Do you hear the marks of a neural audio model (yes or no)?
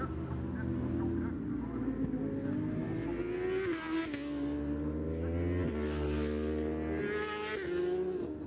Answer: no